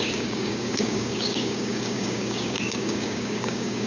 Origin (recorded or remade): remade